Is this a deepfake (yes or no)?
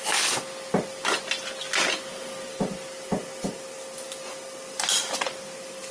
no